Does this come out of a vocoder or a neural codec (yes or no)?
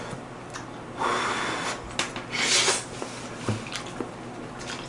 no